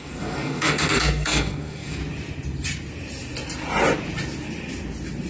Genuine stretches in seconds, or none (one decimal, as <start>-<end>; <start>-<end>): 2.0-5.3